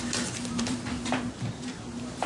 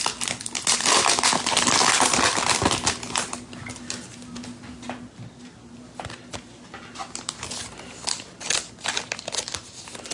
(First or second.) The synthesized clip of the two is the first